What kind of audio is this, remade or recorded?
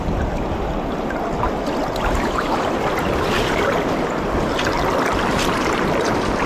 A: recorded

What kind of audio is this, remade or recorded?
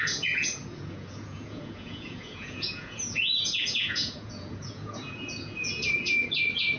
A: remade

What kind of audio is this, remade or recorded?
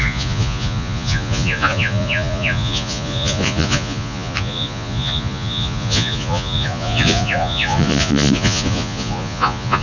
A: remade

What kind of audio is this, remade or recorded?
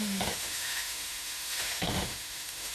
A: remade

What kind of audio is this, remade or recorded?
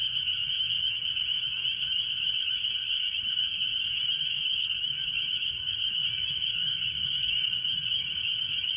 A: remade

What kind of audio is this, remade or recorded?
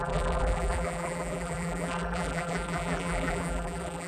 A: remade